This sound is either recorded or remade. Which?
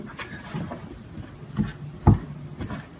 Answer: recorded